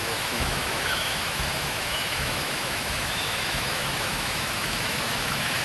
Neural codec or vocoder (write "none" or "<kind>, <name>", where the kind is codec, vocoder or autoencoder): autoencoder, DAC-VAE